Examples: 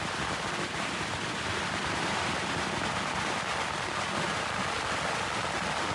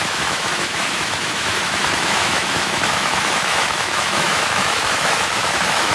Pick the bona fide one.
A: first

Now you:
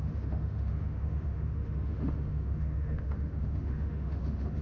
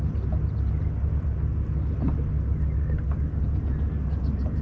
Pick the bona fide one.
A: second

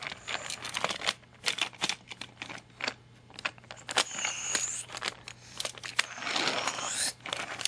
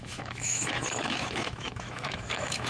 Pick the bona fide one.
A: first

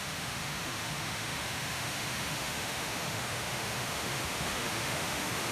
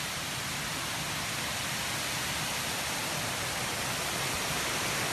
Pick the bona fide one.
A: second